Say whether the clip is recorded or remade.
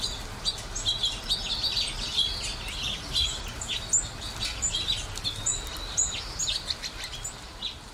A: recorded